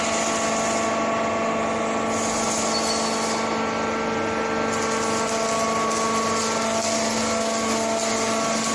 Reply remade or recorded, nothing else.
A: recorded